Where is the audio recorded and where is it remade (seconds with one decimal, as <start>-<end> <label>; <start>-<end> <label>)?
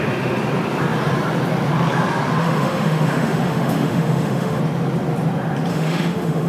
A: 0.0-2.4 recorded; 2.4-4.6 remade; 4.6-5.7 recorded; 5.7-6.5 remade